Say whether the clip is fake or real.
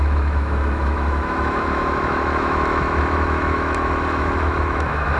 fake